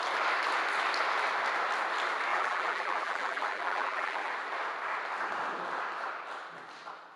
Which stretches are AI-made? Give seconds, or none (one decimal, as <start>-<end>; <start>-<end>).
2.3-4.3